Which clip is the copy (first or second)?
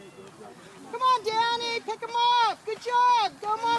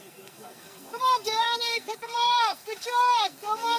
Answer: second